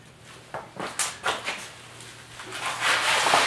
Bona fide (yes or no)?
yes